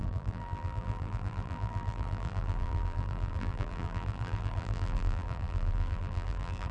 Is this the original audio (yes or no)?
no